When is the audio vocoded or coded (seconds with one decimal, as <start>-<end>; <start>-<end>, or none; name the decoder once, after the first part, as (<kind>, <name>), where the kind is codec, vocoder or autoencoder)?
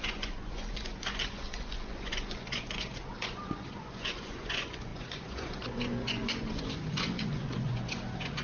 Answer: 0.0-8.4 (vocoder, Vocos)